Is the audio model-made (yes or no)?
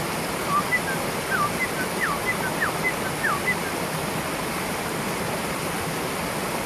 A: no